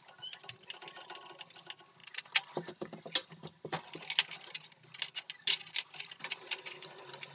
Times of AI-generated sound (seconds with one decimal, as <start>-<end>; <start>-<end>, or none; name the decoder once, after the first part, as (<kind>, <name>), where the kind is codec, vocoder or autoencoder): none